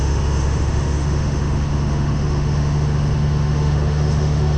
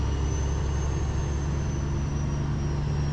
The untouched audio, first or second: second